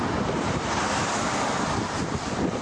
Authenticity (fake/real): real